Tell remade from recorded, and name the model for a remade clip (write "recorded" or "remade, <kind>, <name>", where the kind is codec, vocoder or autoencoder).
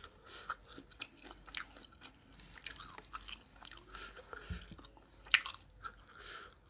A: recorded